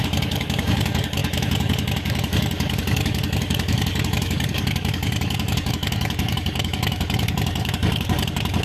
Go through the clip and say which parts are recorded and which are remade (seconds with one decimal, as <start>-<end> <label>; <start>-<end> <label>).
0.0-8.6 remade